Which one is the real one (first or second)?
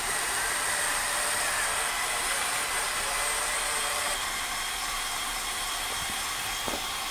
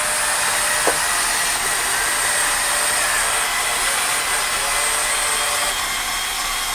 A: second